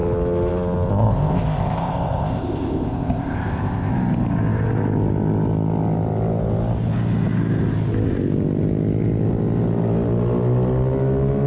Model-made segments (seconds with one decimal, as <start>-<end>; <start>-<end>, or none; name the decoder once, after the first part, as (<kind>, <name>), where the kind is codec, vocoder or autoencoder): 0.9-3.9 (codec, ZipCodec)